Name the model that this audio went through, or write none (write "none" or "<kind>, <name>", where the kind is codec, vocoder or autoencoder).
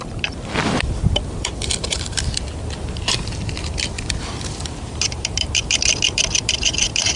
vocoder, BigVGAN v2